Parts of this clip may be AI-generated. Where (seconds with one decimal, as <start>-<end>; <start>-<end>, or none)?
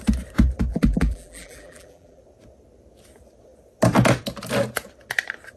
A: 0.7-2.2